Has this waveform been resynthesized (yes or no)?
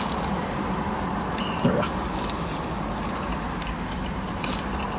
no